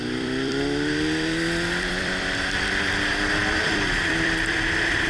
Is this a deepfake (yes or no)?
yes